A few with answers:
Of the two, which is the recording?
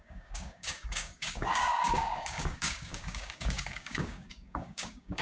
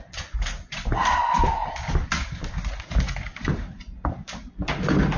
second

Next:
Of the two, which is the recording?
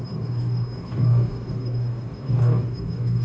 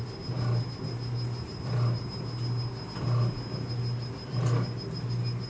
second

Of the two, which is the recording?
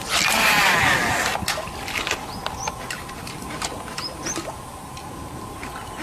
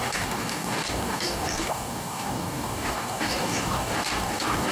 first